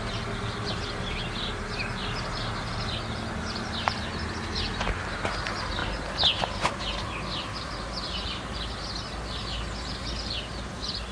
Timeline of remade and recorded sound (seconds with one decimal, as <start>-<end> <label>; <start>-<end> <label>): 0.0-11.1 recorded